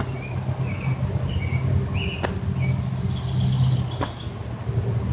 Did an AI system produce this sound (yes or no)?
no